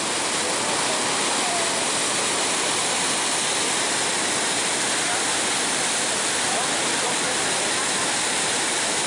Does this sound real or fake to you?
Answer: fake